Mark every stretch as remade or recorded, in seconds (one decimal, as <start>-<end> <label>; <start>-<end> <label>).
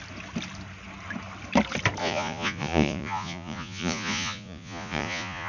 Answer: 0.0-2.0 recorded; 2.0-5.5 remade